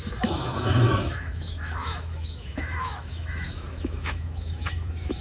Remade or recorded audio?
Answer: remade